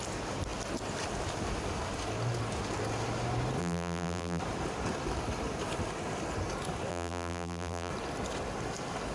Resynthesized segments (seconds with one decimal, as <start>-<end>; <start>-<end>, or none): 3.6-4.4; 6.9-7.9